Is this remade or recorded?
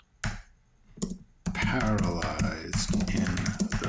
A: recorded